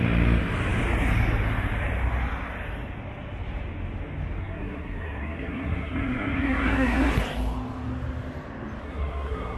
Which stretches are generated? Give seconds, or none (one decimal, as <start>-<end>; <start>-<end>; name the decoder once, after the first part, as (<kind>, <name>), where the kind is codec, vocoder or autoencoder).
4.4-7.1 (codec, SNAC); 8.8-9.6